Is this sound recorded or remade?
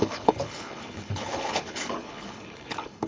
remade